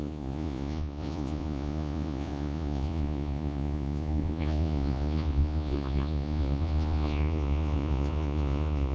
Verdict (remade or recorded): remade